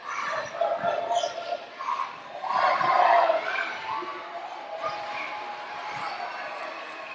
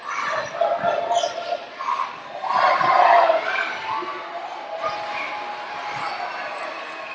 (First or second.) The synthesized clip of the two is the first